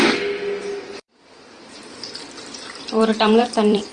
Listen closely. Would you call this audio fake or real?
fake